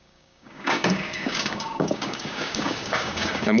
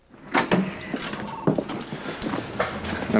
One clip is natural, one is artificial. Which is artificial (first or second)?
first